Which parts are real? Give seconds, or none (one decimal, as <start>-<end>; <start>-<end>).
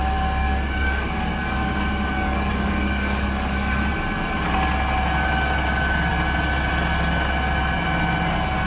0.0-0.4; 3.8-8.7